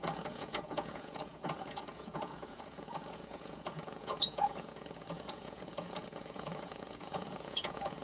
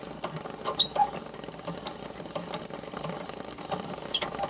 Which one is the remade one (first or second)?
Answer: first